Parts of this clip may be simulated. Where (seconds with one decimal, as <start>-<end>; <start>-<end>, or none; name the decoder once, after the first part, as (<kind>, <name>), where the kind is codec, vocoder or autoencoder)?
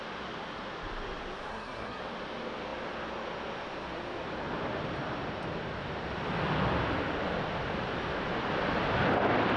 1.5-2.0 (codec, SNAC)